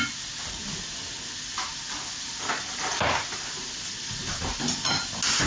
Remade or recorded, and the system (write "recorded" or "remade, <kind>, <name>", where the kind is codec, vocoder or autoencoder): recorded